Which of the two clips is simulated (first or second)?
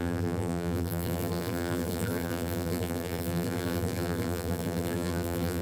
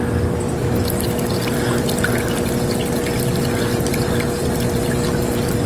first